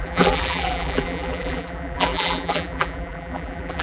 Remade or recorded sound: remade